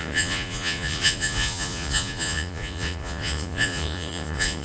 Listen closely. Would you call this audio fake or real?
fake